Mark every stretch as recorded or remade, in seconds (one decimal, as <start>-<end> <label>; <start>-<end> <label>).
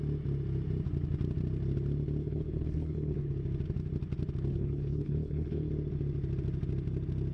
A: 0.0-2.2 recorded; 2.2-3.3 remade; 3.3-4.5 recorded; 4.5-5.7 remade; 5.7-7.3 recorded